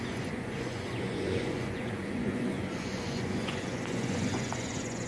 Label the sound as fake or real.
fake